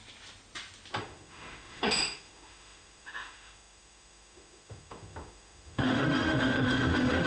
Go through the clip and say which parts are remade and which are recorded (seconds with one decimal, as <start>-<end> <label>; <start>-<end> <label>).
0.0-1.0 recorded; 1.0-7.3 remade